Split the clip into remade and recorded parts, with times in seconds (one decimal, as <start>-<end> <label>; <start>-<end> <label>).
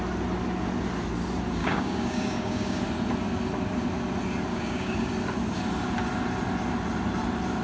0.0-1.6 recorded; 1.6-2.8 remade; 2.8-4.5 recorded; 4.5-5.1 remade; 5.1-7.6 recorded